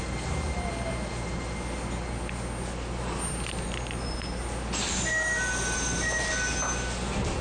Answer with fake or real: real